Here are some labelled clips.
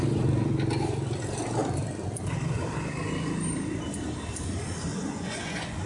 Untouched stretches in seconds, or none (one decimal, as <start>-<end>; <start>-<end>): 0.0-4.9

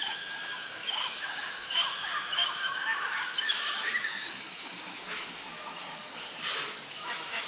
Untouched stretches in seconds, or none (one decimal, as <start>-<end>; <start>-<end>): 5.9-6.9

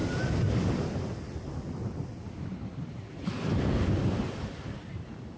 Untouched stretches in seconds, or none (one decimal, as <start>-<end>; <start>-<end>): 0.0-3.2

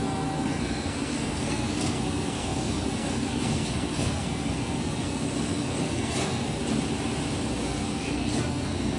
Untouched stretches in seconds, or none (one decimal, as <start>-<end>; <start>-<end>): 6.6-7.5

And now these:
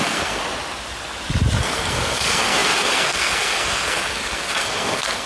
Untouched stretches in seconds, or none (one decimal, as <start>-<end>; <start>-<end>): 0.4-1.6

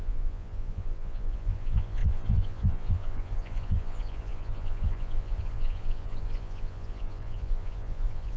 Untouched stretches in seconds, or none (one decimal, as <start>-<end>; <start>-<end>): none

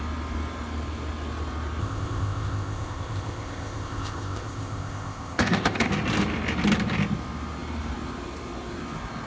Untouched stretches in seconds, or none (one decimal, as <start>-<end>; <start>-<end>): 0.0-1.8; 5.9-9.3